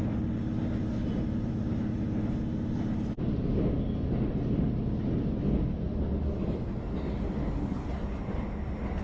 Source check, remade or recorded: recorded